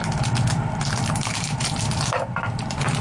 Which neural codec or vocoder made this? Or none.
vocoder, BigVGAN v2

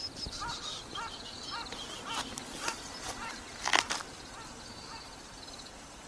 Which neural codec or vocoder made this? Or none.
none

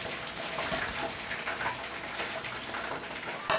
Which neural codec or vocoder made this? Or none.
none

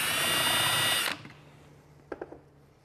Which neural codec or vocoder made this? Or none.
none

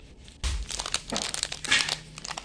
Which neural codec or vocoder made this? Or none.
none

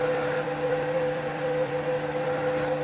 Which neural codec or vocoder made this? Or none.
vocoder, BigVGAN v2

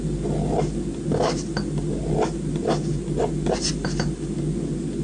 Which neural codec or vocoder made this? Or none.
none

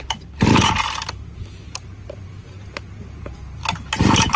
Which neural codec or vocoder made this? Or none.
vocoder, BigVGAN v2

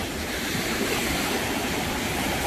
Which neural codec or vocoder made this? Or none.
vocoder, BigVGAN v2